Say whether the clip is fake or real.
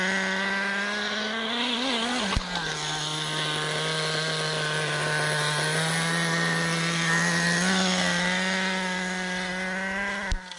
real